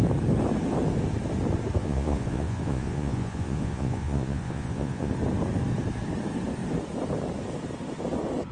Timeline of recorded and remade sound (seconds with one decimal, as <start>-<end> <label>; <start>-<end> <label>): 0.0-1.8 recorded; 1.8-5.1 remade; 5.1-8.5 recorded